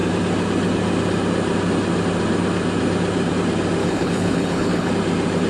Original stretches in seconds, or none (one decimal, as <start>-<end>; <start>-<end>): 0.0-3.8; 4.9-5.5